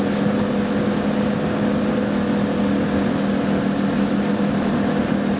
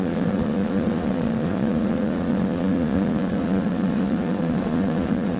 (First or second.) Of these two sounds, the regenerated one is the second